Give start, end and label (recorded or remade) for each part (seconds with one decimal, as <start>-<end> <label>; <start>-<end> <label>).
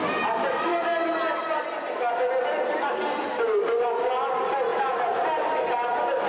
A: 0.0-6.3 recorded